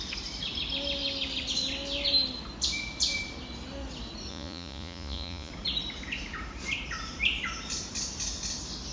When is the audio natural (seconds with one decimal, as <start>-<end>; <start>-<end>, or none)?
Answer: 0.0-4.3; 5.5-8.9